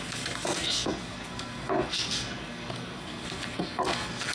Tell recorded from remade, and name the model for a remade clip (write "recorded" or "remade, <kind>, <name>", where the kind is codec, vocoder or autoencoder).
remade, codec, SNAC